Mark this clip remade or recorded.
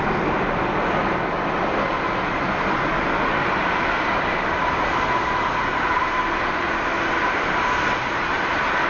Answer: recorded